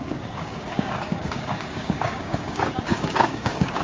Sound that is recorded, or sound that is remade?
remade